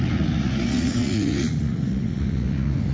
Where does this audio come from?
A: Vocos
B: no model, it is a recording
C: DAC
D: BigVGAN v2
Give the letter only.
A